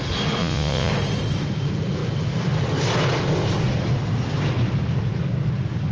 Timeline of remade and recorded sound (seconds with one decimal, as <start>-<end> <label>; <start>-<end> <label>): 0.0-0.4 recorded; 0.4-0.9 remade; 0.9-5.9 recorded